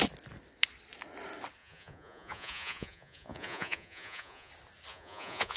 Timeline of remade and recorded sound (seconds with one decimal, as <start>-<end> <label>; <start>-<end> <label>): 0.0-1.6 recorded; 1.6-4.5 remade; 4.5-4.9 recorded; 4.9-5.6 remade